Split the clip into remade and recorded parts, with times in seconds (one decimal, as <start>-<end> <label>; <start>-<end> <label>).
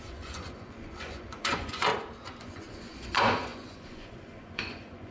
0.0-1.9 remade; 1.9-2.4 recorded; 2.4-5.1 remade